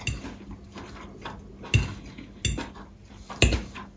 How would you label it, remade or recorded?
recorded